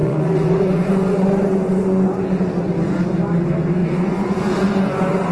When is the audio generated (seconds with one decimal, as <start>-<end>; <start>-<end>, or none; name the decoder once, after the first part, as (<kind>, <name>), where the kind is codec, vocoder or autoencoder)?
0.0-2.7 (vocoder, Vocos); 3.8-5.3